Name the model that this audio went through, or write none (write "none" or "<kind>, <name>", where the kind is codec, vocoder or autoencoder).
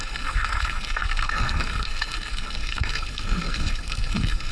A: codec, SNAC